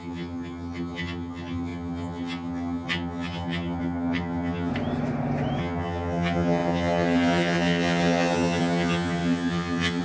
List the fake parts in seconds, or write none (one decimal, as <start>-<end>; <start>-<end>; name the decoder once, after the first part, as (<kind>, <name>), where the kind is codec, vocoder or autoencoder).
0.0-4.7 (vocoder, HiFi-GAN); 5.6-10.0